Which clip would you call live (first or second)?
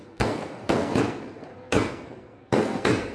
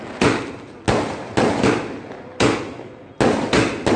second